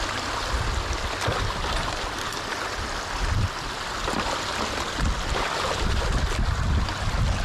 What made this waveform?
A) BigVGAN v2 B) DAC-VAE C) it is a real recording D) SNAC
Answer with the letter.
C